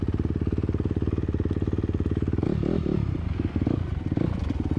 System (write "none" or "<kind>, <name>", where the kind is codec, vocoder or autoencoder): none